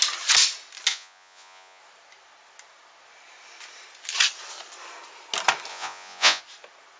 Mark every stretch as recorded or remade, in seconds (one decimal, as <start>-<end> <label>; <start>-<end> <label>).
0.0-0.9 recorded; 0.9-1.8 remade; 1.8-5.7 recorded; 5.7-6.4 remade; 6.4-7.0 recorded